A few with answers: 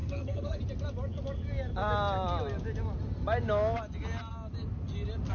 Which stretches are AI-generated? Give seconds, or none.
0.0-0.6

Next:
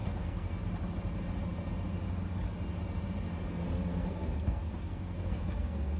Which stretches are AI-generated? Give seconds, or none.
0.0-0.6; 3.9-6.0

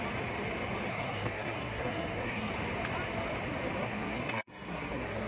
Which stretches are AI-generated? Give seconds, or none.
0.9-2.5; 3.8-5.3

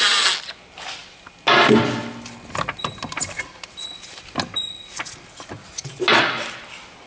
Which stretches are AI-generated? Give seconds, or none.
none

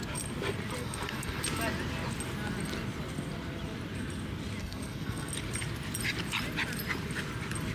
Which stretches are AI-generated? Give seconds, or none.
0.8-1.4; 4.6-5.3

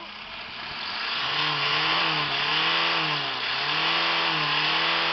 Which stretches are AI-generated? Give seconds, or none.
1.1-2.0